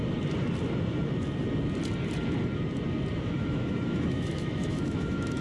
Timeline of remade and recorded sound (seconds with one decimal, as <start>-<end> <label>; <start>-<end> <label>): 0.0-3.2 recorded; 3.2-5.4 remade